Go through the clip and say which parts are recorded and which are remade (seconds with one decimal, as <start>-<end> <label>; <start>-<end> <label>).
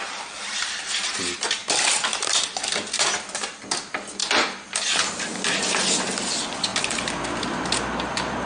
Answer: 0.0-8.5 recorded